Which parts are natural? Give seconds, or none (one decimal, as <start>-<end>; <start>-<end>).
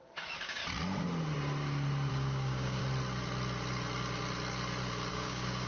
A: 0.6-2.1; 2.8-5.1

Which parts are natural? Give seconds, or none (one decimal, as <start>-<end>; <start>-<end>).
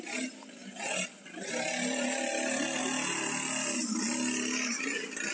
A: 0.0-5.3